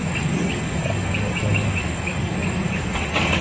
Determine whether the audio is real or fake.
fake